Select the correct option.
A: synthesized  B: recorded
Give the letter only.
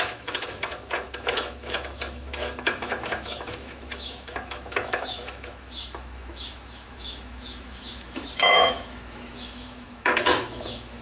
A